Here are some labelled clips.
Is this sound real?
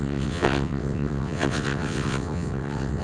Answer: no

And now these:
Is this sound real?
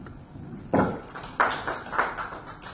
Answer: yes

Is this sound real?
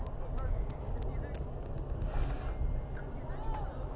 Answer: yes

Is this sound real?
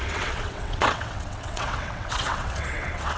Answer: no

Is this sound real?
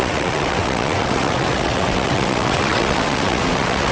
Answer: no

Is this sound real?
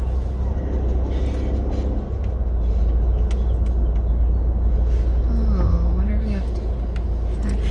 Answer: yes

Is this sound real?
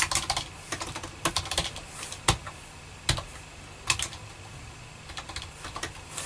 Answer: yes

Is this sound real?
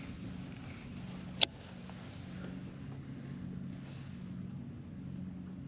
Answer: yes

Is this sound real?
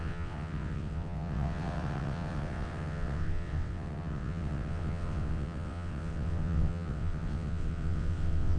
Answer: no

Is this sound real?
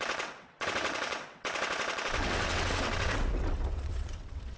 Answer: no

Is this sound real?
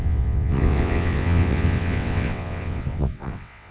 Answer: no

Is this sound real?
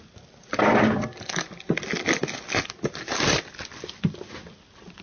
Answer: yes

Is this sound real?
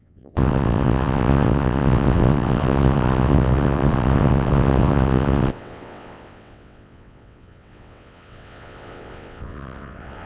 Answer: no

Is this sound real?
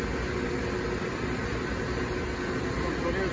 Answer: yes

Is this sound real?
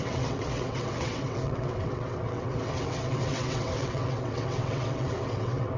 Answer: no